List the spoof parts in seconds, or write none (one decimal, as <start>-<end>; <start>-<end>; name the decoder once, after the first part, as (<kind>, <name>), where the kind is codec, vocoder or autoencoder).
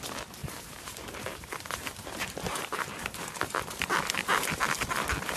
0.4-3.6 (vocoder, BigVGAN v2)